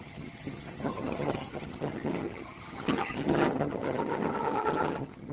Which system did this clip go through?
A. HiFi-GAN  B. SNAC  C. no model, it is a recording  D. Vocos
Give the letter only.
A